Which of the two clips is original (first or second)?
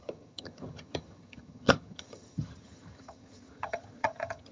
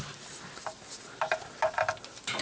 second